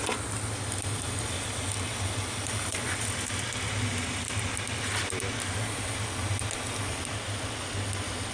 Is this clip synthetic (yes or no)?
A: no